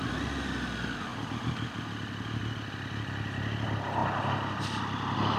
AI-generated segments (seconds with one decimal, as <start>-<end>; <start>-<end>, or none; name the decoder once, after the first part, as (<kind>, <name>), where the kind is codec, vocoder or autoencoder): 4.0-4.6 (vocoder, BigVGAN v2)